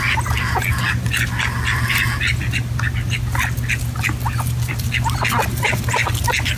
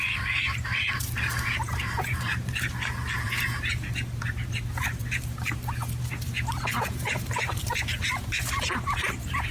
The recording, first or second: first